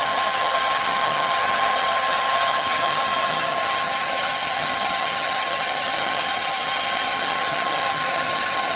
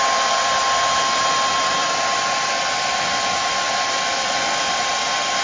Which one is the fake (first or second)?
first